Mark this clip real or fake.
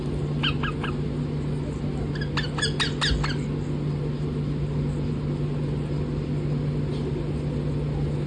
real